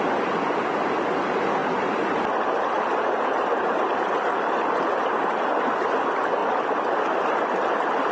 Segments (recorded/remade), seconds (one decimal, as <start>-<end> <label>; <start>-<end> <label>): 0.0-1.6 recorded; 1.6-5.6 remade; 5.6-6.4 recorded; 6.4-6.9 remade; 6.9-8.1 recorded